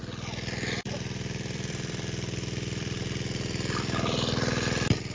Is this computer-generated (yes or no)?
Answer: yes